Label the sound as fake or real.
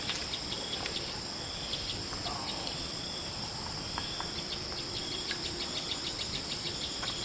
fake